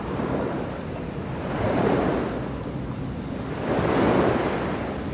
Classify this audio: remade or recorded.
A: recorded